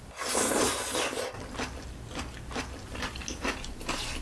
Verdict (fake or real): real